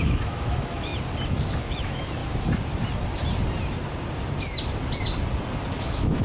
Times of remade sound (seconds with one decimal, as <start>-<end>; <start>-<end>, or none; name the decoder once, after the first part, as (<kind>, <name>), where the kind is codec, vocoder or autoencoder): 0.0-0.9 (autoencoder, DAC-VAE); 1.6-2.2; 5.8-6.2